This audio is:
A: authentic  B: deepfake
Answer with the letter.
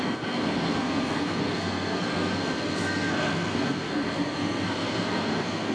B